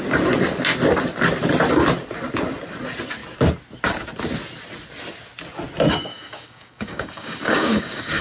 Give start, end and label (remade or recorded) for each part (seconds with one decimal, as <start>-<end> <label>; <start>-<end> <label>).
0.0-5.9 recorded; 5.9-8.2 remade